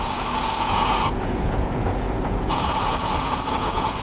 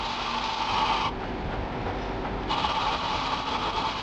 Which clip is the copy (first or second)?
first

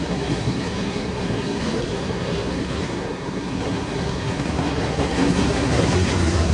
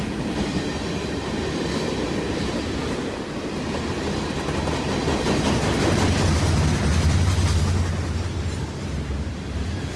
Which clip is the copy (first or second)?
first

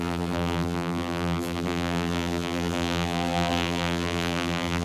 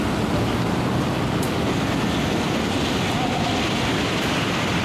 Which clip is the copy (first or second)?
first